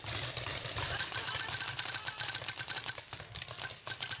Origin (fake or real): real